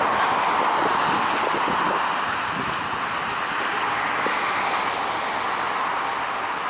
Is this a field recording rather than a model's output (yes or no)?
yes